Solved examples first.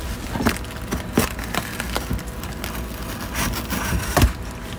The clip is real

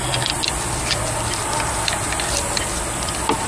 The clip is real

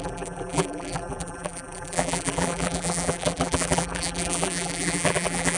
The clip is fake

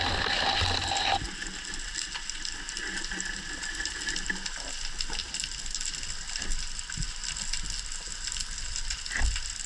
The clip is real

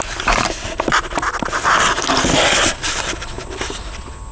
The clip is real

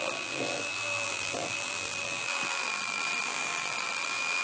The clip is fake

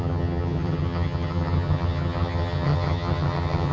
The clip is fake